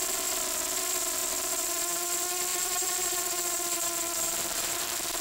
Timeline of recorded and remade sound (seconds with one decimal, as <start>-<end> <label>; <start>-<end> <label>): 0.0-1.2 recorded; 1.2-1.8 remade; 1.8-2.5 recorded; 2.5-5.2 remade